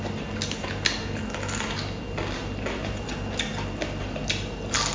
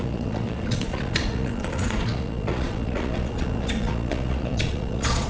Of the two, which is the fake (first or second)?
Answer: second